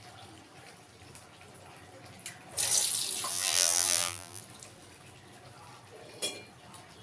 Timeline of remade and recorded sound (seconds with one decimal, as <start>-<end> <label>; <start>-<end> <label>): 0.0-3.3 recorded; 3.3-4.4 remade; 4.4-7.0 recorded